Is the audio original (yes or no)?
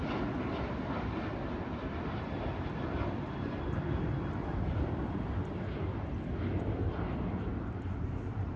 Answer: no